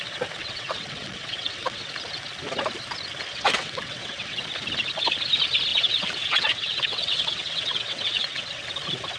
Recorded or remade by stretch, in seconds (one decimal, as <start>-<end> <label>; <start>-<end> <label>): 0.0-0.4 recorded; 0.4-1.9 remade; 1.9-3.3 recorded; 3.3-4.4 remade; 4.4-5.7 recorded; 5.7-8.6 remade; 8.6-9.2 recorded